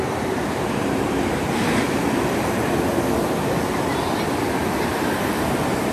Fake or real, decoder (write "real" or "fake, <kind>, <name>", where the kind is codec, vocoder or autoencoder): fake, vocoder, BigVGAN v2